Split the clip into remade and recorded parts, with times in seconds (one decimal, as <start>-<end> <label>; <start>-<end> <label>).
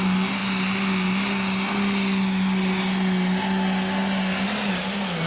0.0-5.3 recorded